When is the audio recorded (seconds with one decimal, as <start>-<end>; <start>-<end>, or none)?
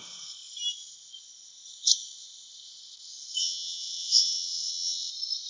0.0-3.4; 5.1-5.5